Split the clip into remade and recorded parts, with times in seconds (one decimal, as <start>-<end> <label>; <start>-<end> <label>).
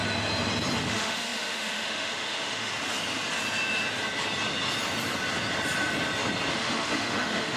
0.0-0.8 recorded; 0.8-2.7 remade; 2.7-6.5 recorded; 6.5-7.6 remade